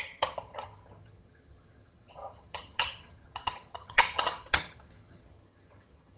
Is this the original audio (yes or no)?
no